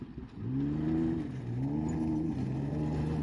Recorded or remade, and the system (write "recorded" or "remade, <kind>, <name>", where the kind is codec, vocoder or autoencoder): recorded